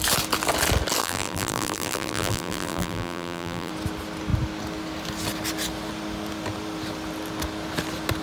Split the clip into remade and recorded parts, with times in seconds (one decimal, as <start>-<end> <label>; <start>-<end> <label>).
0.0-1.0 recorded; 1.0-3.7 remade; 3.7-8.2 recorded